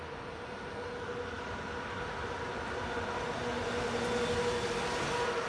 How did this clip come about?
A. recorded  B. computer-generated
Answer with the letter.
A